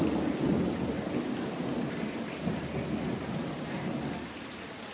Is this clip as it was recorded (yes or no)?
yes